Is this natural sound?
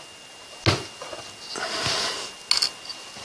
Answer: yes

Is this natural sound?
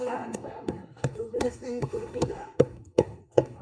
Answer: no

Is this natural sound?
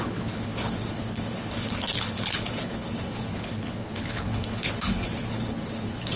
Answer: no